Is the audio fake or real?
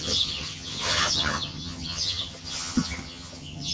fake